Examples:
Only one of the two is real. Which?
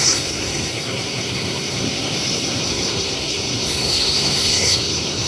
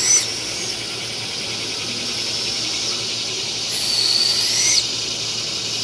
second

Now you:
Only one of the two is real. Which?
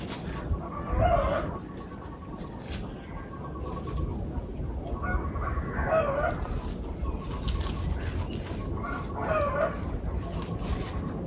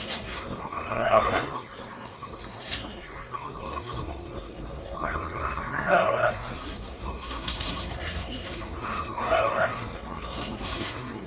first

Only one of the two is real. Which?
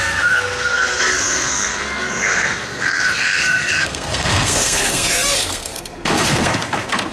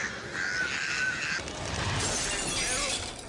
second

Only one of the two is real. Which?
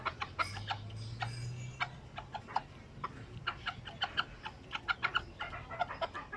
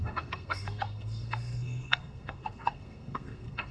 first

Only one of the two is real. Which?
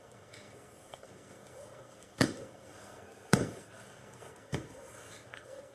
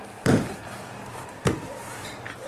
second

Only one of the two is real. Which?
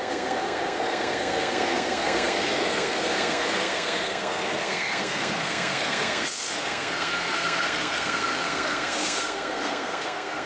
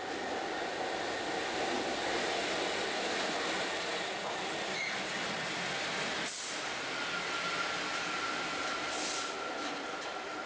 second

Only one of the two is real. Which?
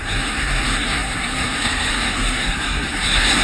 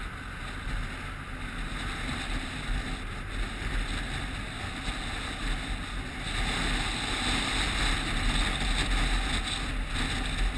second